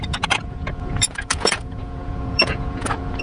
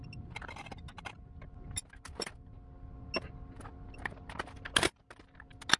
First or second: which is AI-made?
first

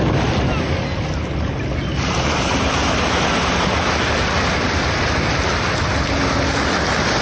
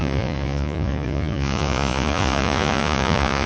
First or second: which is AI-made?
second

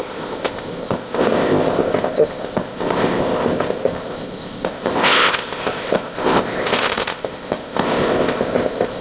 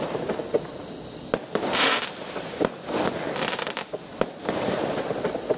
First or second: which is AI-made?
first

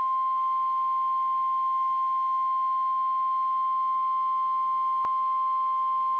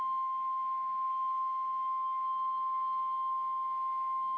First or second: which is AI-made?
second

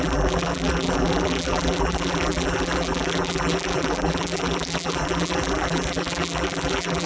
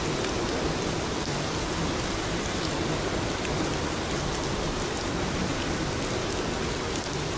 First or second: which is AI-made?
first